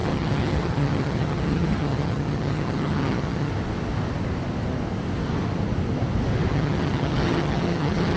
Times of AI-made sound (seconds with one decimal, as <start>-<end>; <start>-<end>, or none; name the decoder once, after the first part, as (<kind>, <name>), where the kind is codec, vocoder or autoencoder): 0.0-3.5 (vocoder, HiFi-GAN); 6.5-8.2